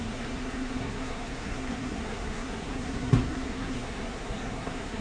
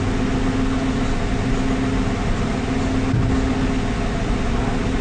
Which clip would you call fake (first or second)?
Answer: first